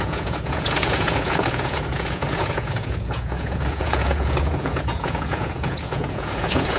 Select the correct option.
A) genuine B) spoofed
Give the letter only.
B